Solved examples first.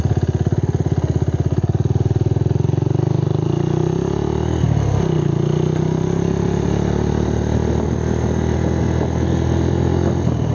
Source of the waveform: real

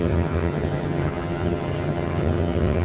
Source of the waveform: fake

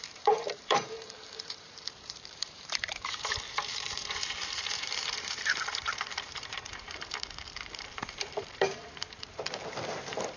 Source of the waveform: fake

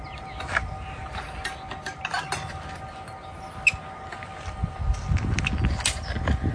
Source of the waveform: real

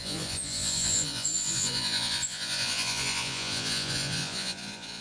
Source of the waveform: fake